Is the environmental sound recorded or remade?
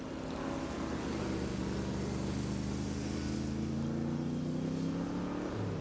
recorded